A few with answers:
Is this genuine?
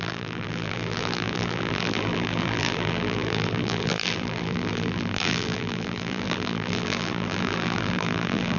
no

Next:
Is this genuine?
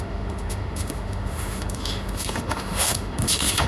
no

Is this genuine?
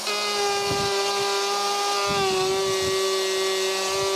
yes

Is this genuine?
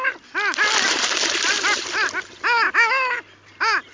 yes